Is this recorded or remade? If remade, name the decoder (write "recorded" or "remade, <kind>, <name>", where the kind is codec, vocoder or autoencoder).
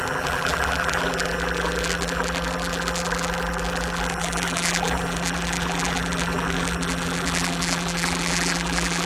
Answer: remade, vocoder, BigVGAN v2